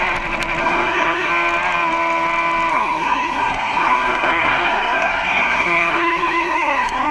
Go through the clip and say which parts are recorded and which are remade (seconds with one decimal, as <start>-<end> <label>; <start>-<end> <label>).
0.0-0.6 recorded; 0.6-1.3 remade; 1.3-2.7 recorded; 2.7-7.1 remade